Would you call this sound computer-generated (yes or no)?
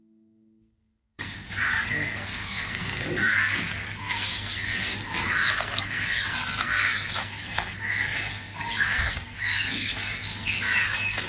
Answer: yes